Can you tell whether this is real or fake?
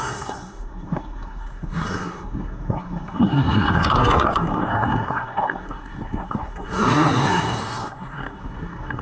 fake